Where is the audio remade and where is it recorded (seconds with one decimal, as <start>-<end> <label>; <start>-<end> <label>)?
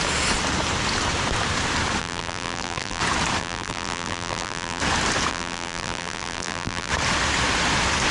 0.0-2.0 recorded; 2.0-3.0 remade; 3.0-3.4 recorded; 3.4-4.8 remade; 4.8-5.3 recorded; 5.3-6.9 remade; 6.9-8.1 recorded